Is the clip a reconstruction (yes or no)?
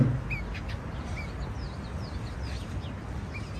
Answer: no